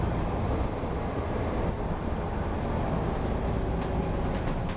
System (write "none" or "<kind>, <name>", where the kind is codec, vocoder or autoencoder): none